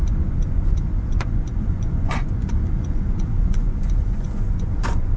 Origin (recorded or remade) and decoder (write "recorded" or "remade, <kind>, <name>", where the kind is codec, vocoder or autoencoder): remade, vocoder, Vocos